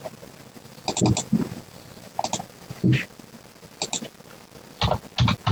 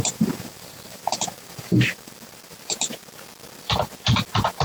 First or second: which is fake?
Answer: second